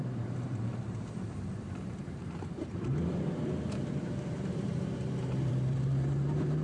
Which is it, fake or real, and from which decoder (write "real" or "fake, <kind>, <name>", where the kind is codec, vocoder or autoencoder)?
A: fake, vocoder, BigVGAN v2